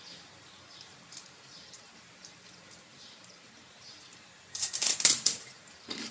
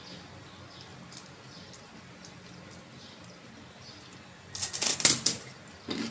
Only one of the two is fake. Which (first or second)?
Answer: first